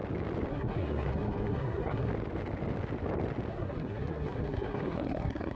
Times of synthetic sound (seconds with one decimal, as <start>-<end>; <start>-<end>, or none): 0.5-2.1; 3.5-5.5